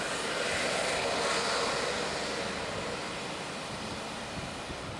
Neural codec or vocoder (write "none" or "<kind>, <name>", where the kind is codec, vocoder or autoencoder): none